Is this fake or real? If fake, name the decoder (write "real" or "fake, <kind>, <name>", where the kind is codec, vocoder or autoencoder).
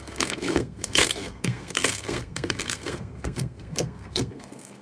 fake, codec, SNAC